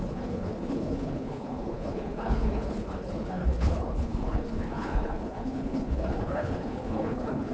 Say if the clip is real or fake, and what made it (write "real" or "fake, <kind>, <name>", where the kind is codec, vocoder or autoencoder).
fake, codec, HILCodec